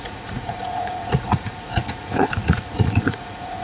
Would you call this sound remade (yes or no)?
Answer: yes